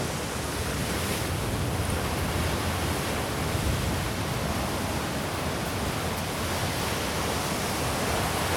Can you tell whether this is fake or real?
real